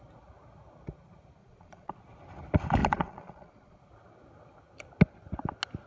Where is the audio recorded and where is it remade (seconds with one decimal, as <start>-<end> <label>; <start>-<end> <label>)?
0.0-1.4 recorded; 1.4-2.0 remade; 2.0-2.8 recorded; 2.8-3.8 remade; 3.8-5.9 recorded